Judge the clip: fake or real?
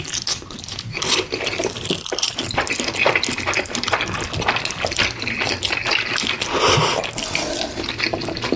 real